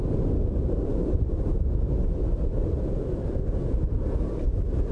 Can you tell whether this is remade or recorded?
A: recorded